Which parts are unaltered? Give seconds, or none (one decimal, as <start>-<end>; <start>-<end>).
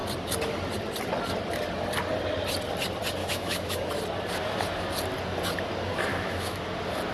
0.0-3.2; 3.9-6.1; 6.6-7.1